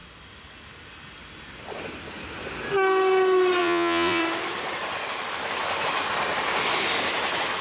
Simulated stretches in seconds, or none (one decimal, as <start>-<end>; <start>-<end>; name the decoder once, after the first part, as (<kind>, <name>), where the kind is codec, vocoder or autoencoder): 3.6-4.2 (vocoder, Vocos)